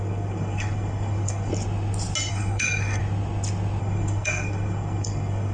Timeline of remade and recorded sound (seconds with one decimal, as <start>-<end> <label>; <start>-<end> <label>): 0.0-1.5 remade; 1.5-2.3 recorded; 2.3-3.0 remade; 3.0-3.8 recorded; 3.8-5.5 remade